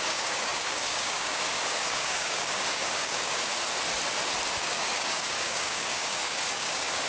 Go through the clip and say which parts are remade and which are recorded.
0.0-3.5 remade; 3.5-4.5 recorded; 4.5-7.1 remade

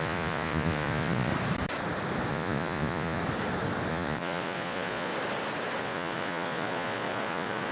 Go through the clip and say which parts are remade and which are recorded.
0.0-1.3 remade; 1.3-2.3 recorded; 2.3-3.2 remade; 3.2-3.9 recorded; 3.9-5.1 remade; 5.1-5.8 recorded; 5.8-7.7 remade

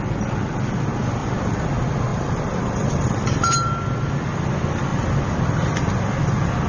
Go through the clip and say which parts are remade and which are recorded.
0.0-1.2 recorded; 1.2-1.7 remade; 1.7-2.1 recorded; 2.1-3.7 remade; 3.7-6.7 recorded

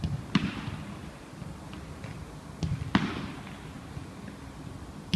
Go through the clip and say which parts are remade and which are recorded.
0.0-5.2 recorded

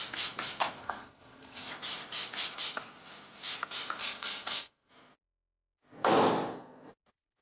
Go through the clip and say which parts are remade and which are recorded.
0.0-0.8 recorded; 0.8-1.6 remade; 1.6-4.0 recorded; 4.0-4.9 remade; 4.9-7.4 recorded

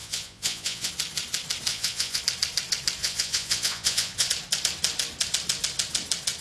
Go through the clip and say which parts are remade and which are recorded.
0.0-0.9 remade; 0.9-1.7 recorded; 1.7-2.2 remade; 2.2-3.0 recorded; 3.0-4.3 remade; 4.3-6.4 recorded